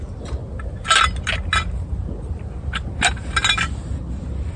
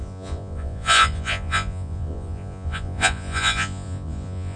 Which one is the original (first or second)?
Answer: first